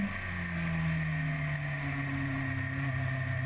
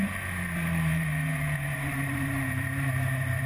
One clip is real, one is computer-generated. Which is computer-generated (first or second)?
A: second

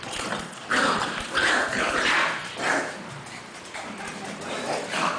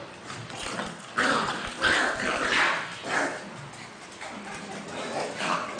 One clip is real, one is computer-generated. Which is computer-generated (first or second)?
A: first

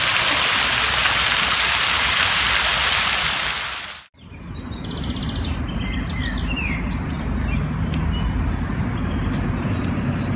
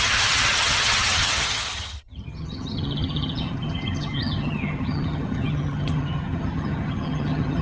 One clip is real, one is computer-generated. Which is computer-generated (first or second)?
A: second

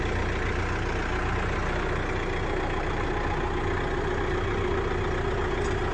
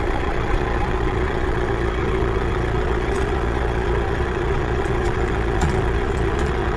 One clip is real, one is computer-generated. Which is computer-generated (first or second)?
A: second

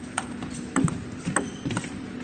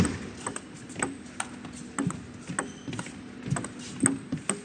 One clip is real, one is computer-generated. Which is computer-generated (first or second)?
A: first